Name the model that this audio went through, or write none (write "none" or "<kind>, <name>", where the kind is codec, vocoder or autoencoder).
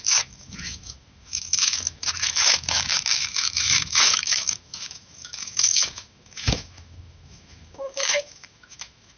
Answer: autoencoder, DAC-VAE